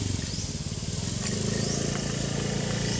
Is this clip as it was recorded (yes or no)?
yes